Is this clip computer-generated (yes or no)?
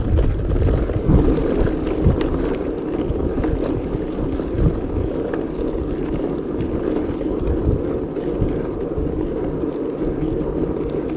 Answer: no